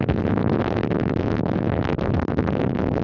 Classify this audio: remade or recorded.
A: remade